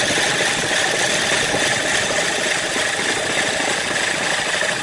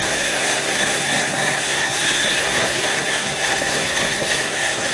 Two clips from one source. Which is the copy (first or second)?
second